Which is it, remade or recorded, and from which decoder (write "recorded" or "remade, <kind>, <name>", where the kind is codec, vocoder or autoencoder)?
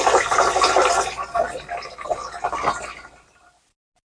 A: recorded